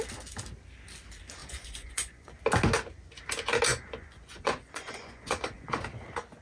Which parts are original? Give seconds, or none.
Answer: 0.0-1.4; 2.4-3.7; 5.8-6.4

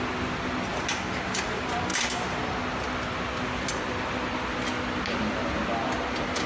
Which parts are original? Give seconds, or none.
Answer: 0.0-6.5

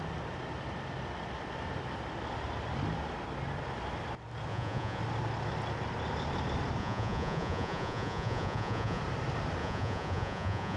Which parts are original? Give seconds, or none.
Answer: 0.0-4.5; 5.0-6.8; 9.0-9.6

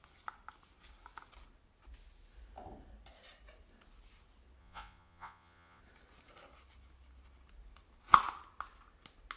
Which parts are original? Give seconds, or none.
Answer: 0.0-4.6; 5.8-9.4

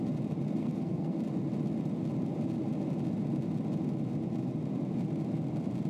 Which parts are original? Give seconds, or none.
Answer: 0.0-0.6; 1.2-5.9

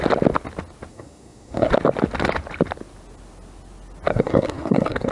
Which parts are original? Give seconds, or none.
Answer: 0.0-0.9; 1.7-4.1